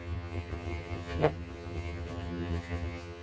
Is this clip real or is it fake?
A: fake